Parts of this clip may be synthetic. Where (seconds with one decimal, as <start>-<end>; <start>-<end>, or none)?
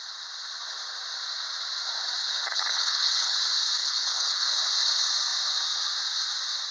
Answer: 2.2-3.4; 3.8-4.6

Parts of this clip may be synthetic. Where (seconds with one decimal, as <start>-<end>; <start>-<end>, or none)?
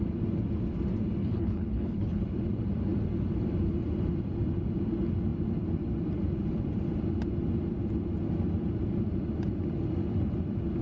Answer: 1.2-2.2